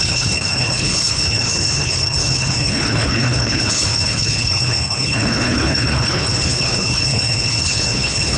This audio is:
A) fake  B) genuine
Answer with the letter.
A